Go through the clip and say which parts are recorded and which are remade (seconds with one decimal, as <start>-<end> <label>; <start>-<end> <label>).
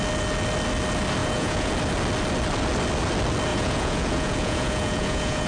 0.0-1.2 recorded; 1.2-1.7 remade; 1.7-3.5 recorded; 3.5-5.5 remade